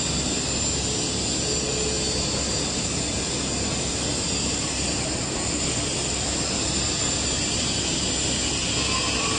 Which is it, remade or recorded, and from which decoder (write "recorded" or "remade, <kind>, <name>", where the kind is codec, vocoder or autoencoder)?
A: recorded